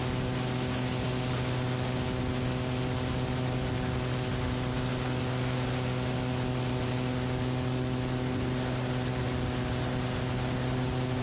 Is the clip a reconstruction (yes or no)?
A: no